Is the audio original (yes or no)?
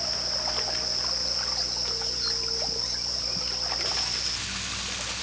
yes